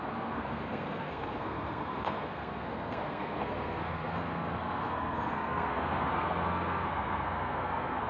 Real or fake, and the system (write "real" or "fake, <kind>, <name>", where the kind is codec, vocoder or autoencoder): fake, codec, SNAC